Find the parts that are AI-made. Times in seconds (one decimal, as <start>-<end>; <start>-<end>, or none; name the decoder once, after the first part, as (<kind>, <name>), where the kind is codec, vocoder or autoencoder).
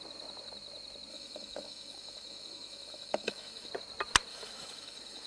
1.1-3.7 (autoencoder, DAC-VAE); 4.3-5.3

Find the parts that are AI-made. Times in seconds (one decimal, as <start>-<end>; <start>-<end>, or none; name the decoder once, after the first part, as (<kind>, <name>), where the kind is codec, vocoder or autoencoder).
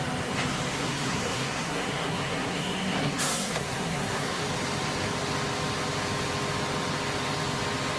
0.7-4.4 (codec, SNAC)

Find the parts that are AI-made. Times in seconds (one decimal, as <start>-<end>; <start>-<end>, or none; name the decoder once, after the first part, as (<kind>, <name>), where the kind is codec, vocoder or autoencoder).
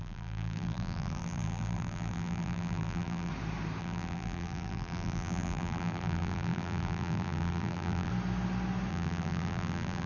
0.0-3.3 (vocoder, BigVGAN v2); 3.8-8.1; 8.9-10.1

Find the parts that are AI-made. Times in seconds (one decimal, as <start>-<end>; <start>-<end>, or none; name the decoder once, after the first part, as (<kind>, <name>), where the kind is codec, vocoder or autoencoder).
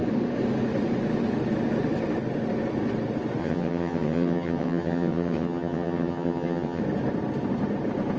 3.4-6.8 (vocoder, HiFi-GAN)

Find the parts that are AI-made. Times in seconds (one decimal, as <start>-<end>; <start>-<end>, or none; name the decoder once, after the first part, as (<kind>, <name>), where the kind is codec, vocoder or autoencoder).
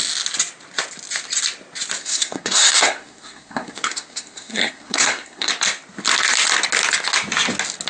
2.0-5.5 (codec, SNAC)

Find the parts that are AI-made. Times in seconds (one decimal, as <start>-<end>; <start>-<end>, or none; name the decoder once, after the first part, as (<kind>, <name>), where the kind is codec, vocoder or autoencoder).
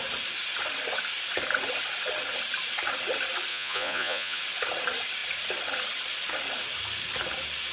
3.5-4.4 (vocoder, Vocos)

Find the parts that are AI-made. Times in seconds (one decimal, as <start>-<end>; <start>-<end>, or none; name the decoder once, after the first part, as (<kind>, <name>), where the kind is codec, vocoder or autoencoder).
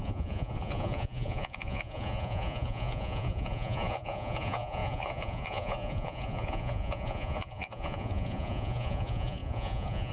0.0-10.1 (vocoder, Vocos)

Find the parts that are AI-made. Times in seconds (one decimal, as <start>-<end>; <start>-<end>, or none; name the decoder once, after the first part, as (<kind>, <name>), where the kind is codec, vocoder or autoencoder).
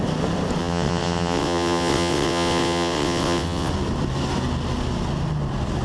0.6-3.7 (vocoder, WaveNeXt)